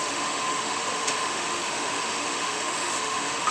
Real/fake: fake